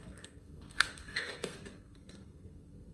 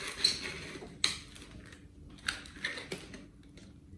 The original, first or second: second